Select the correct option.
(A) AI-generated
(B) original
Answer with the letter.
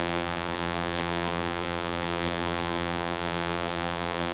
A